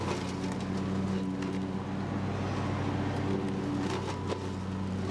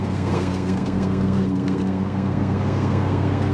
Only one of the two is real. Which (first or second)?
first